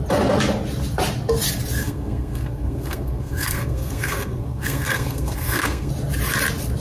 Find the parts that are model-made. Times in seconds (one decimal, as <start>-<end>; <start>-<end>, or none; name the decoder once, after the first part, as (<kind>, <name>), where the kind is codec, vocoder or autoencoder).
1.8-5.9 (codec, SNAC)